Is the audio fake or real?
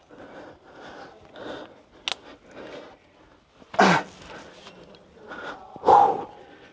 real